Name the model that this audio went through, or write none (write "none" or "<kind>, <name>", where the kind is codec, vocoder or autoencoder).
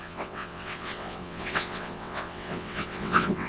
vocoder, WaveNeXt